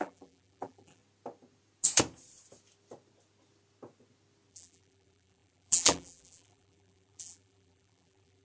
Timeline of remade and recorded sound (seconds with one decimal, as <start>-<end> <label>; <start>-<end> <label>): 0.0-1.0 remade; 1.0-4.5 recorded; 4.5-8.4 remade